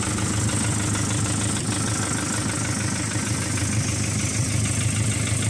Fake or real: real